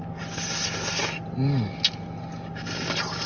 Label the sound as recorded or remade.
recorded